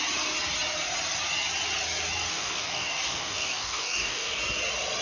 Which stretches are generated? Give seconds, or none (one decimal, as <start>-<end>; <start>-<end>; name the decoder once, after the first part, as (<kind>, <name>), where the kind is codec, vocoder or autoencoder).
2.3-4.4 (codec, DAC)